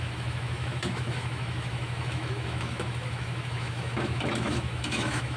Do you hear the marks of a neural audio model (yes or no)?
yes